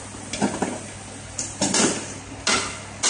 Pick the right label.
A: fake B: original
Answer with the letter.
B